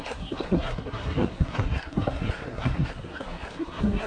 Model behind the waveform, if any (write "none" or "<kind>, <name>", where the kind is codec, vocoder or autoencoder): codec, SNAC